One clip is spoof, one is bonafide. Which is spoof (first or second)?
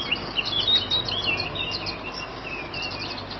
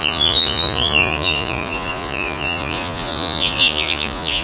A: second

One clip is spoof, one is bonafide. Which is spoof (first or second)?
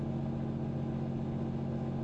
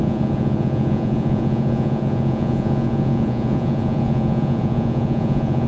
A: second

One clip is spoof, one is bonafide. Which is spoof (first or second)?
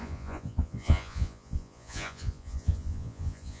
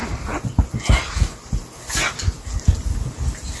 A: first